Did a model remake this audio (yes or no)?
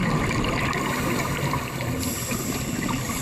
no